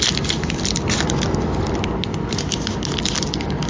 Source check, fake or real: real